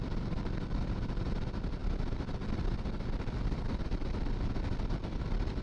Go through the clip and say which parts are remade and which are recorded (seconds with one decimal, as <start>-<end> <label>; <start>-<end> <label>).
0.0-5.6 recorded